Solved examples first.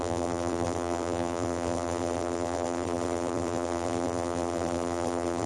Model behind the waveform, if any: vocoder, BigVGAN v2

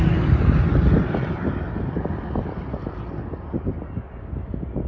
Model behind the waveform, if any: none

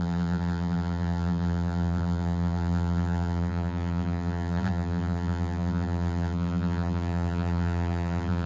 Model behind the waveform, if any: vocoder, BigVGAN v2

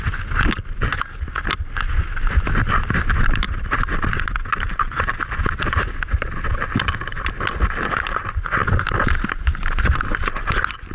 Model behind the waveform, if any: none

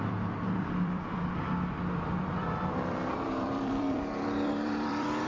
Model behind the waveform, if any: vocoder, BigVGAN v2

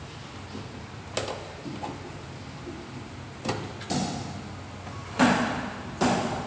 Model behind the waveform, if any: none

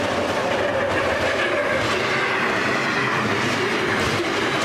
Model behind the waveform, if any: none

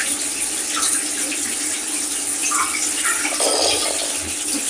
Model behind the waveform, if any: none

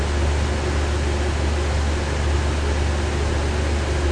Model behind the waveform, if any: none